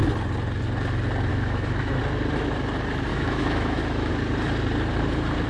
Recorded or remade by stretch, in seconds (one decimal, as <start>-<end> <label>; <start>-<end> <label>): 0.0-1.3 recorded; 1.3-2.0 remade; 2.0-3.1 recorded; 3.1-4.1 remade; 4.1-5.5 recorded